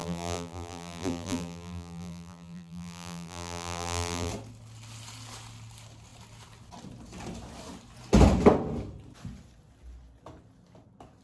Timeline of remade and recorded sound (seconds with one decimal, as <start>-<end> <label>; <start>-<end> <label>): 0.0-4.3 remade; 4.3-11.2 recorded